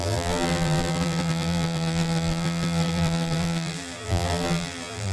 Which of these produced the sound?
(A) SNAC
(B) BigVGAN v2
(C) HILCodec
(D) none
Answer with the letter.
B